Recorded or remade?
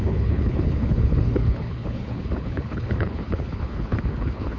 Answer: remade